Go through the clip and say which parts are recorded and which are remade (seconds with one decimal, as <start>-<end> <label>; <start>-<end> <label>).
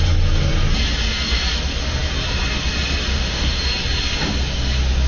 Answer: 0.0-3.1 recorded; 3.1-3.6 remade; 3.6-5.1 recorded